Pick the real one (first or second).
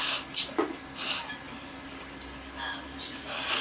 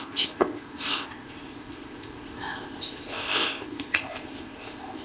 first